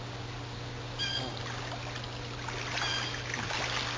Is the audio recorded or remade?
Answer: recorded